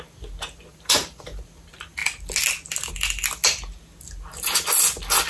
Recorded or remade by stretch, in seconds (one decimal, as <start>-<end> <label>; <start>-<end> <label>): 0.0-0.7 recorded; 0.7-1.4 remade; 1.4-5.3 recorded